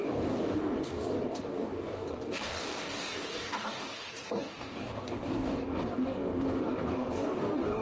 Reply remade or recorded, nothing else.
remade